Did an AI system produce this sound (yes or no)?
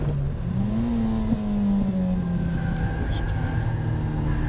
no